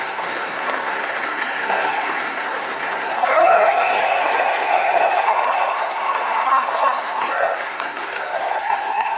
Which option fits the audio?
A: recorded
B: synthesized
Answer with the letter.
B